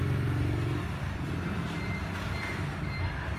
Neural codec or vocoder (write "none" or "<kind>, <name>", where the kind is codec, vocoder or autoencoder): none